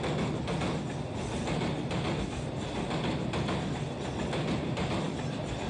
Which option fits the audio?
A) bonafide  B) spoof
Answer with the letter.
A